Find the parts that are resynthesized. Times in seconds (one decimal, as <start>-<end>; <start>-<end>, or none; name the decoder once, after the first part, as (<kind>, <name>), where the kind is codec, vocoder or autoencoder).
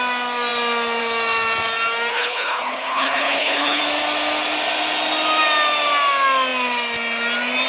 2.1-3.8 (codec, HILCodec)